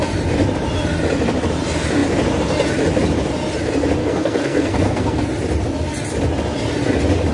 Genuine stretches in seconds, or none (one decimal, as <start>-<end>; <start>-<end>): 0.0-4.0; 5.3-7.3